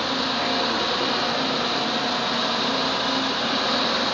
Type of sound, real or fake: real